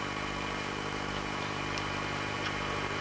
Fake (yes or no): yes